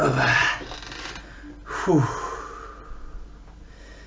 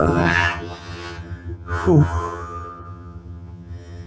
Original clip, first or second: first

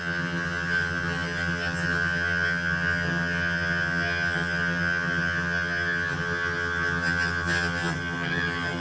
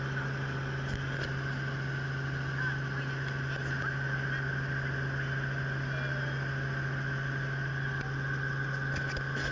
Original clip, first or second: second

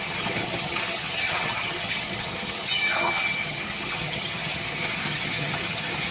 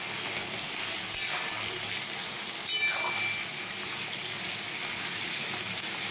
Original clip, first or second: second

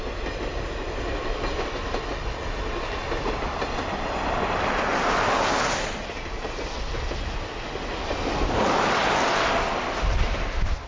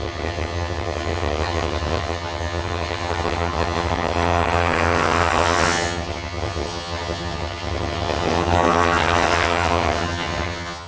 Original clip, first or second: first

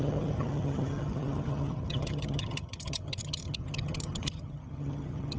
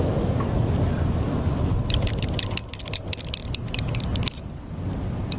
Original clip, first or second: second